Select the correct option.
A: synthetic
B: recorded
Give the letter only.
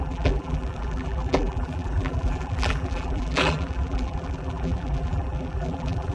A